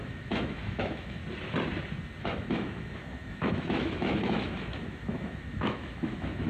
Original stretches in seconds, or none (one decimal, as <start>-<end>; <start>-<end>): 1.2-2.2